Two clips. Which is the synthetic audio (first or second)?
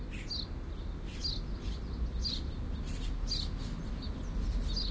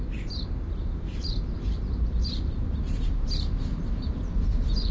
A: second